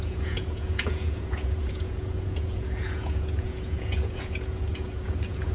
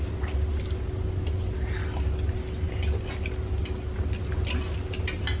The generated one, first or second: first